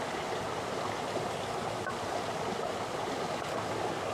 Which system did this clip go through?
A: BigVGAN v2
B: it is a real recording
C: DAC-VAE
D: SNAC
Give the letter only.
B